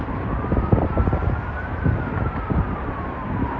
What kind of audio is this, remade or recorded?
remade